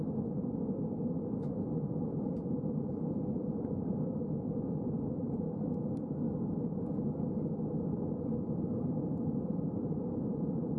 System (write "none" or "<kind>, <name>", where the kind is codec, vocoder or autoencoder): vocoder, BigVGAN v2